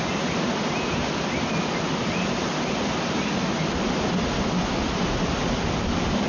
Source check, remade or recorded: recorded